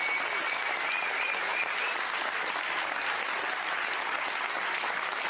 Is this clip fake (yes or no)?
no